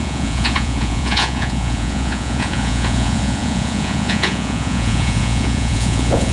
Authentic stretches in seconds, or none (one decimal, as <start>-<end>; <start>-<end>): none